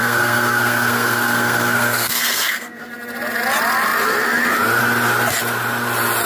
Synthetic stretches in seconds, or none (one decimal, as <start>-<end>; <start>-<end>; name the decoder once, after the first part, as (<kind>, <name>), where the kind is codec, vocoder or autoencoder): 0.0-2.9 (codec, SNAC)